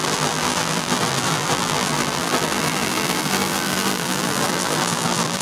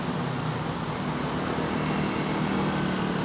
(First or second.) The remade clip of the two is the first